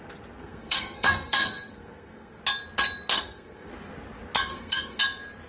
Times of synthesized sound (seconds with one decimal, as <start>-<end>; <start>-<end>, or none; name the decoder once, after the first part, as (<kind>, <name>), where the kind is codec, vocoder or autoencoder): 0.4-2.4 (codec, SNAC); 3.1-3.7; 4.5-5.0